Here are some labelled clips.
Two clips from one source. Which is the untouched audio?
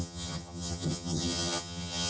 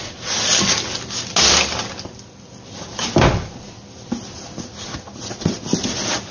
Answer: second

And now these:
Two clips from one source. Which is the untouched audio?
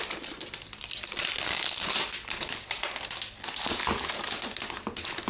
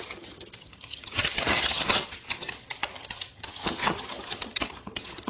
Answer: first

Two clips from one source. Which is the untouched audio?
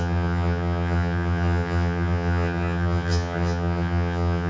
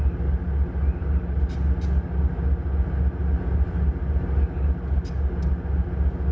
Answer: second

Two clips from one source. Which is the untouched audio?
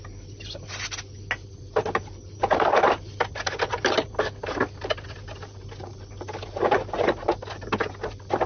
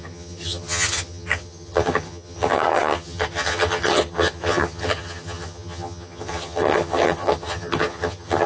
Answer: first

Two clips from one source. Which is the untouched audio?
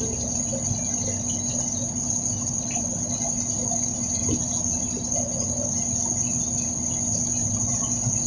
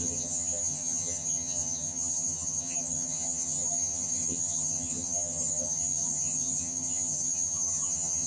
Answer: first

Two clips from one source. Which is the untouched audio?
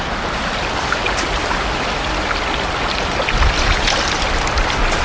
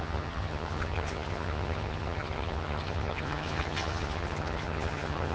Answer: first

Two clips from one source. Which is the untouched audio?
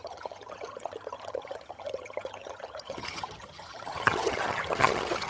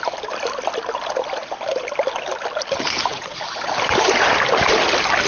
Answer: second